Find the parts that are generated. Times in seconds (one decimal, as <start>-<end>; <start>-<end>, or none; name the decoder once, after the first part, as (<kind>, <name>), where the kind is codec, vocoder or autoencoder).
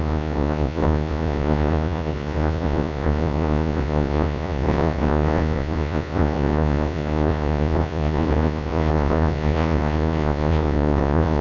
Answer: 0.0-11.4 (vocoder, Vocos)